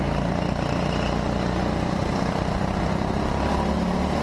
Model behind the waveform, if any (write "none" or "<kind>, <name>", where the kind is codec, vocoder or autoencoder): none